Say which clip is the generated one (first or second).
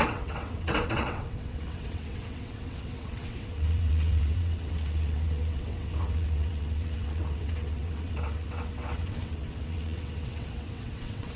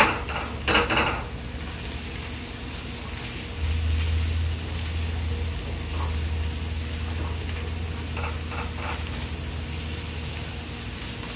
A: first